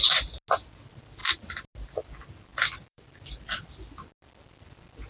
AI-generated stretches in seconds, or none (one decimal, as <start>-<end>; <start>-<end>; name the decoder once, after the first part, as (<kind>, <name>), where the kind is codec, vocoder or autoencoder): 2.5-3.4 (vocoder, BigVGAN v2)